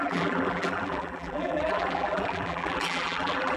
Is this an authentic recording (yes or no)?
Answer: no